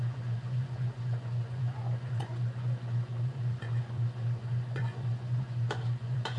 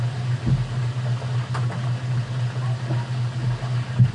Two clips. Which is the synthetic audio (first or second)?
first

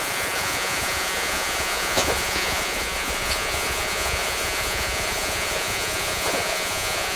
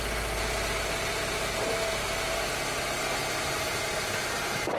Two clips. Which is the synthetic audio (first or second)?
first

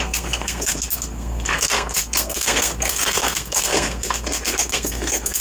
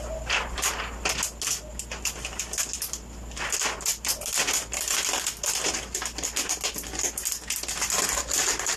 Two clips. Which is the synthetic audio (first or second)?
first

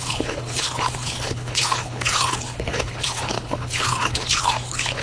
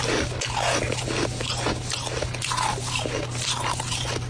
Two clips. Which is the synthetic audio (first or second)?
first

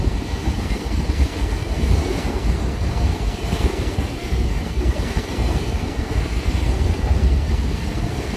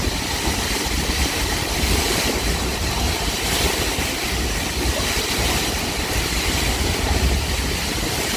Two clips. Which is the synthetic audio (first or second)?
first